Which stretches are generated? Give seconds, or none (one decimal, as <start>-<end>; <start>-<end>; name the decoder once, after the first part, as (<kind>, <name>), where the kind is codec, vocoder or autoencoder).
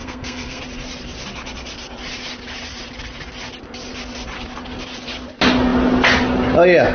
0.0-0.6 (codec, SNAC)